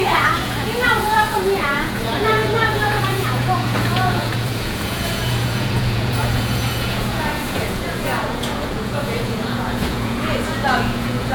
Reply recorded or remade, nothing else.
remade